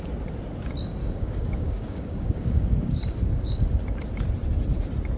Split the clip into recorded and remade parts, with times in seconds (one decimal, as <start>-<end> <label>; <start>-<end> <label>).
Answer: 0.0-1.0 recorded; 1.0-3.6 remade; 3.6-5.2 recorded